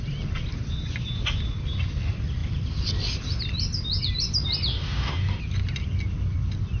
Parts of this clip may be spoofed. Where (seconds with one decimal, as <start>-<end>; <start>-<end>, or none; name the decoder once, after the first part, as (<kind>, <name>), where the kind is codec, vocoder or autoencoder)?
4.7-5.4 (codec, DAC)